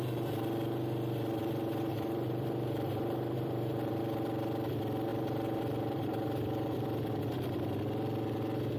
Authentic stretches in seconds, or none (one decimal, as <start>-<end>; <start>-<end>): 0.0-1.4; 4.0-5.1; 7.2-8.8